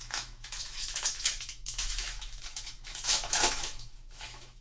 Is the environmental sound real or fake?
fake